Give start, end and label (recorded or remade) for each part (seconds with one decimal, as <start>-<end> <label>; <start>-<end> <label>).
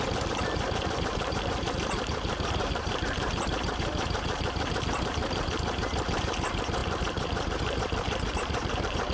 0.0-9.1 remade